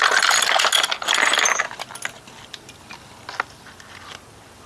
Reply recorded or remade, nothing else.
recorded